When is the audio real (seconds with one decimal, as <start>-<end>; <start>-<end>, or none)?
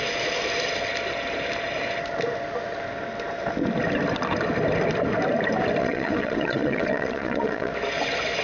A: 0.0-5.8; 7.7-8.4